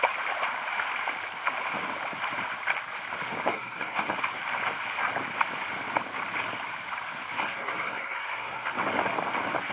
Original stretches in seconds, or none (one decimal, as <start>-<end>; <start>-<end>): 0.0-3.5; 4.1-7.4; 8.7-9.7